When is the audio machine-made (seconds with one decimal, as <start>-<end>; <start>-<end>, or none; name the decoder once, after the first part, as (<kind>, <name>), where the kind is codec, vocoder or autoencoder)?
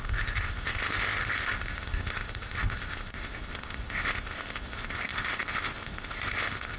0.0-6.8 (codec, ZipCodec)